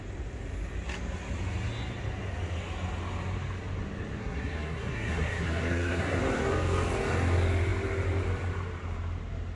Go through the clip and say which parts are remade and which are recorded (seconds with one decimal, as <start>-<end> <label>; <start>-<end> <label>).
0.0-4.2 recorded; 4.2-6.2 remade; 6.2-9.6 recorded